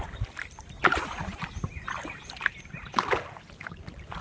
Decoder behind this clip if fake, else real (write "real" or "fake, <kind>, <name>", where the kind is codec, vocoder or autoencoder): real